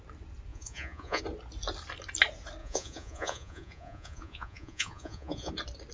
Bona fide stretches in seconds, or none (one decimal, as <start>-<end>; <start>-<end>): 0.0-0.5; 1.2-2.6; 5.5-5.9